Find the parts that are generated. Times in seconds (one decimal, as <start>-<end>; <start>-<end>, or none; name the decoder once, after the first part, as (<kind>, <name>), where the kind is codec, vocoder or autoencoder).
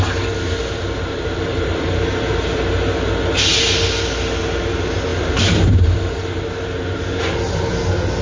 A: 5.1-6.4 (vocoder, BigVGAN v2)